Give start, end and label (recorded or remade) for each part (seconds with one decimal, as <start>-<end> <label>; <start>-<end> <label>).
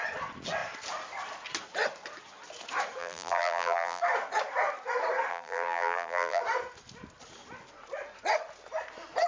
0.0-3.0 recorded; 3.0-4.0 remade; 4.0-5.3 recorded; 5.3-6.4 remade; 6.4-9.3 recorded